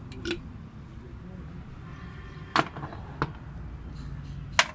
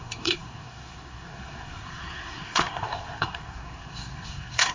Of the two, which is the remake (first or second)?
second